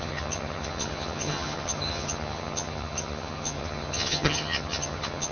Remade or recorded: remade